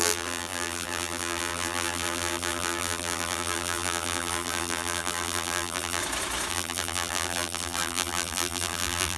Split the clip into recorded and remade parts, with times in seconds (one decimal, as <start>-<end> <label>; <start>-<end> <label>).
0.0-6.0 remade; 6.0-6.5 recorded; 6.5-9.2 remade